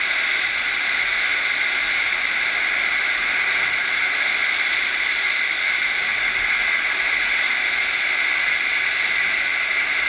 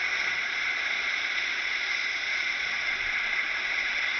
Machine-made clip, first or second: second